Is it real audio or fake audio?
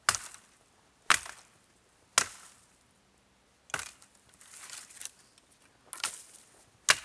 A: real